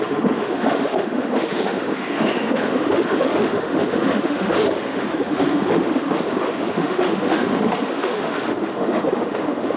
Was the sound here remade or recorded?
remade